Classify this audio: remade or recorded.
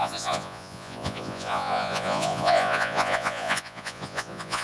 remade